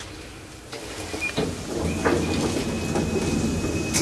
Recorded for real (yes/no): yes